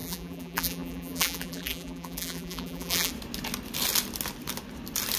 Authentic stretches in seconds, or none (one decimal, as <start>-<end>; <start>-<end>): 3.1-5.2